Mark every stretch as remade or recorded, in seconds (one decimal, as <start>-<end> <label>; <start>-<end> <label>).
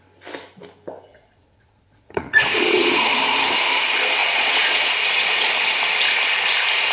0.0-1.1 recorded; 1.1-3.1 remade; 3.1-4.2 recorded; 4.2-5.5 remade; 5.5-6.9 recorded